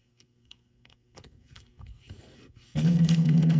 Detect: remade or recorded remade